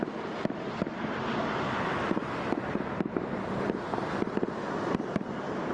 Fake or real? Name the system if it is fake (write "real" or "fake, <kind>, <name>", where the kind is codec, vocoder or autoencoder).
fake, vocoder, BigVGAN v2